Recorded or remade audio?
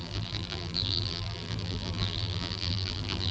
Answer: remade